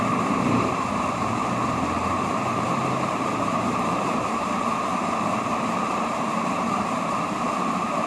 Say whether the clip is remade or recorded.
remade